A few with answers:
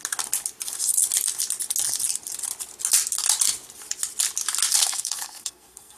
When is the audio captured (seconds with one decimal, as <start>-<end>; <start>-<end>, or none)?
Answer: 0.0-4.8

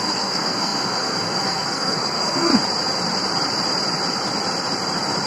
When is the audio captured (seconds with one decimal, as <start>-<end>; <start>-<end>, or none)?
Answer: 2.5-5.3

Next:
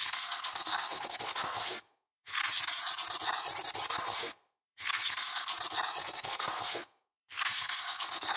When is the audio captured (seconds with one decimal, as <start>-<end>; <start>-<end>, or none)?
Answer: 2.4-4.0; 5.5-6.0